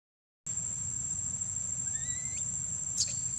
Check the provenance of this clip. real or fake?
real